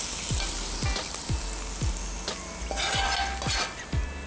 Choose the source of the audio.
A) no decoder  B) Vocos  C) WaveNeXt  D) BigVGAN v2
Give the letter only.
A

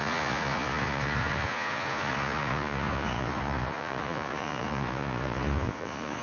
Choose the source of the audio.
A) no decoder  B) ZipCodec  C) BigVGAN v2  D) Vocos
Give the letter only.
D